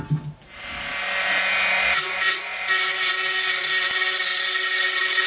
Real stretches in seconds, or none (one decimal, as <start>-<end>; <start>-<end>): 0.0-5.3